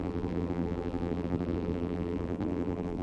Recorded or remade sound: remade